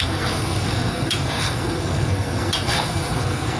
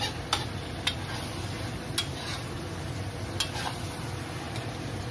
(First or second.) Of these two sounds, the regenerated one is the first